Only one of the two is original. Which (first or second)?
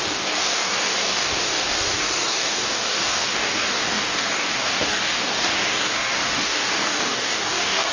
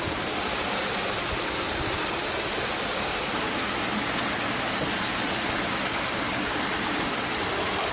second